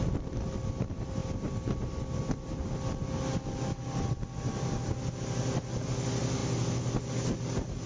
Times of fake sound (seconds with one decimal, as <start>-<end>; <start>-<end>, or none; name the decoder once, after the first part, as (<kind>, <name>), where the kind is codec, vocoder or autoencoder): none